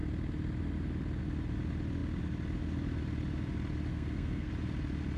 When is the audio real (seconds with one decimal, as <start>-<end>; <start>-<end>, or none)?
0.0-3.9; 4.5-5.2